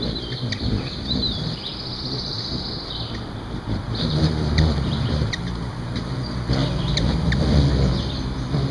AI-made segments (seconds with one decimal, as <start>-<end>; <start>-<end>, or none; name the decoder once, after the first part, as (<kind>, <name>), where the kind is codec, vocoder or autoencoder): 1.2-6.1 (vocoder, BigVGAN v2); 6.6-7.3